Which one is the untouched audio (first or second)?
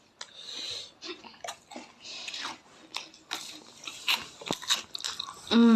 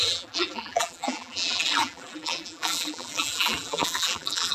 first